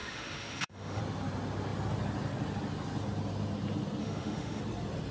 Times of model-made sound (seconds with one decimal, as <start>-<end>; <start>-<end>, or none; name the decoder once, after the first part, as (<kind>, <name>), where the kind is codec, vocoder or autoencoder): 0.0-1.0 (autoencoder, DAC-VAE); 4.0-4.6